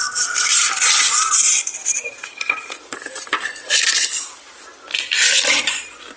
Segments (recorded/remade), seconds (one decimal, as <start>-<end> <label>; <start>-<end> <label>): 0.0-6.2 recorded